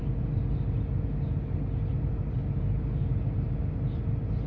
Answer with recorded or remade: recorded